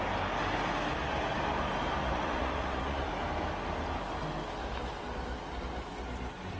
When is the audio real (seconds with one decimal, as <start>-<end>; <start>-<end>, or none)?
0.0-2.0; 3.1-6.6